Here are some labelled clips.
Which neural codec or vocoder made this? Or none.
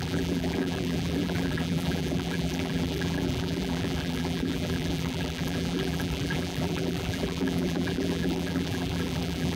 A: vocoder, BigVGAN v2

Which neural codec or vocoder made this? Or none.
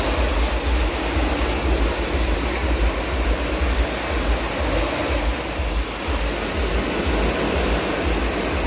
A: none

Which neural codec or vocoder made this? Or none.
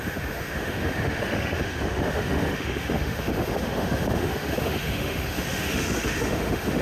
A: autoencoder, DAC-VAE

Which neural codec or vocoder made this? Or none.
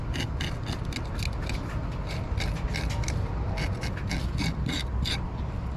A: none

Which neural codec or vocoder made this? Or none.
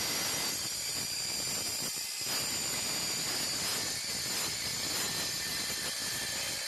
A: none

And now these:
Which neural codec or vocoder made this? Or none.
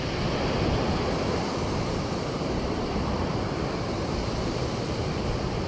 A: vocoder, BigVGAN v2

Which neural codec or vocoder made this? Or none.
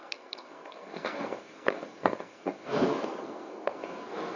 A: codec, SNAC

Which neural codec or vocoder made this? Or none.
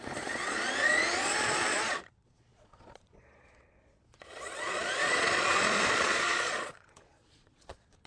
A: vocoder, Vocos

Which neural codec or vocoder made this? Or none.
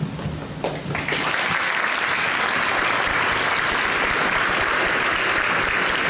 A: none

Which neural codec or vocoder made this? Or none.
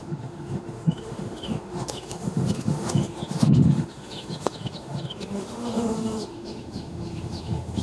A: autoencoder, DAC-VAE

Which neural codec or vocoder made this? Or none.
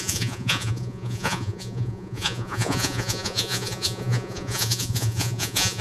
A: vocoder, Vocos